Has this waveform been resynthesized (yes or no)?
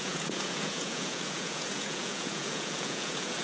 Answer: yes